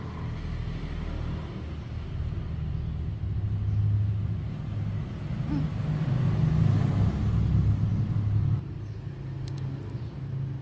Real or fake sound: real